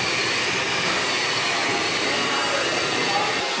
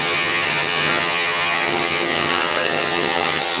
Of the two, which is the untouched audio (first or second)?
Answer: first